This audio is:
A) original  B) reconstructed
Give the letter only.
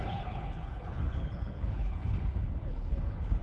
B